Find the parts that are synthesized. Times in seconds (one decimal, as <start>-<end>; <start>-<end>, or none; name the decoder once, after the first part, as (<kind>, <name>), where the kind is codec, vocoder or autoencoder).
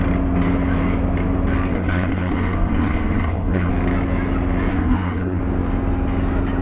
1.7-3.7 (codec, SNAC); 4.7-5.4